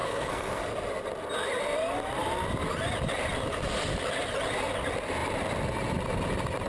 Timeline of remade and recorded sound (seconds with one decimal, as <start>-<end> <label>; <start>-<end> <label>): 0.0-0.6 remade; 0.6-6.7 recorded